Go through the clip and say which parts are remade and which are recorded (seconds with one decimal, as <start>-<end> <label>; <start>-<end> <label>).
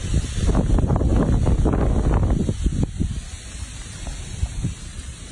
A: 0.0-5.3 recorded